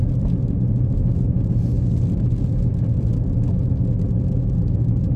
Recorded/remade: recorded